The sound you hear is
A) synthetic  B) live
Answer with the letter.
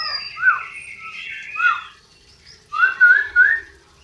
B